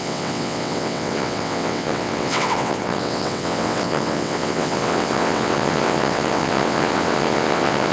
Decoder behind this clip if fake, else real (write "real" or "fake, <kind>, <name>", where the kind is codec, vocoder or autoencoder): fake, vocoder, WaveNeXt